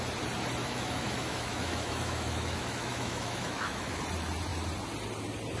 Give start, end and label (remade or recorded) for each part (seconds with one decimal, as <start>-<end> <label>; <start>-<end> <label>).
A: 0.0-0.6 recorded; 0.6-4.0 remade; 4.0-5.6 recorded